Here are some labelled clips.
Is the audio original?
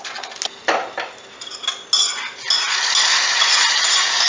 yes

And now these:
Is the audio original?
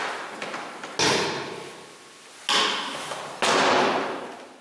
yes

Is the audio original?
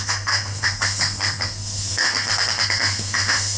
no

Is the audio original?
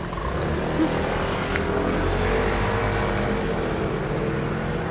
yes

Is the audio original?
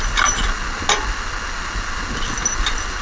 yes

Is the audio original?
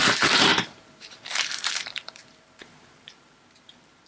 no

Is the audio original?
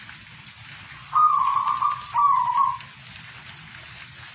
yes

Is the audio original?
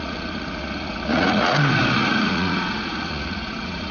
no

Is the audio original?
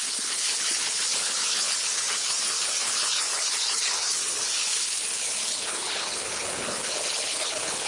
no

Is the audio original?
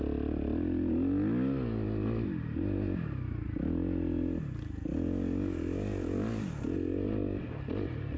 yes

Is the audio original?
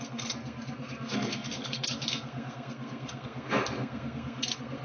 no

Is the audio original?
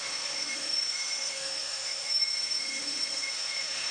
no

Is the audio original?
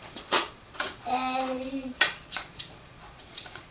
no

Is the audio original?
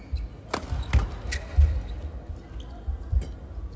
yes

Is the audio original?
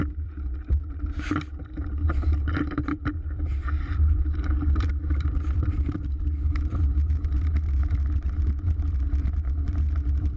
no